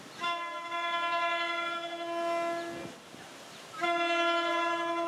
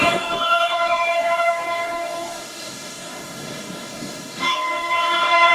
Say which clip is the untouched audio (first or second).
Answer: first